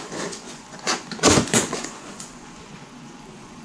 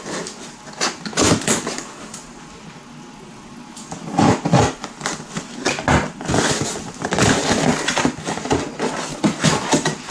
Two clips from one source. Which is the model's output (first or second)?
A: first